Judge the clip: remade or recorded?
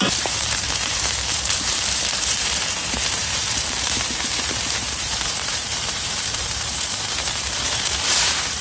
remade